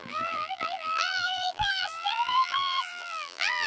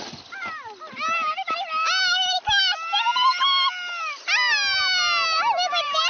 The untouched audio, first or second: second